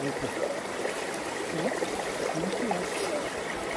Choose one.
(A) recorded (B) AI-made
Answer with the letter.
A